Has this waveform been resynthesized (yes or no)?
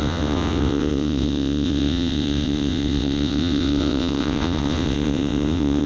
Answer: yes